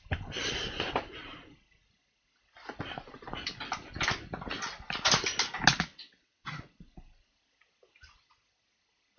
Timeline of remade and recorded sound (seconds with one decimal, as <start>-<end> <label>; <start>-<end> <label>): 0.0-5.9 recorded; 5.9-6.5 remade; 6.5-9.2 recorded